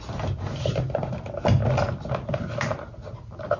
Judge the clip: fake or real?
real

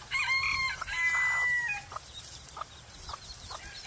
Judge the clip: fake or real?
real